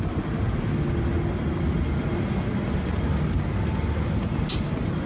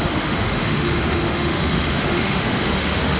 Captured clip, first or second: first